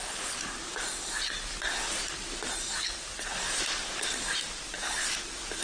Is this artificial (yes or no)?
no